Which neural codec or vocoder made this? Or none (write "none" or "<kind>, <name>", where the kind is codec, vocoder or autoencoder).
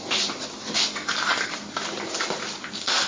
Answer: vocoder, BigVGAN v2